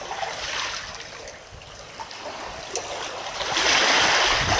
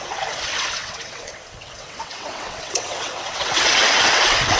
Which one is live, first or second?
first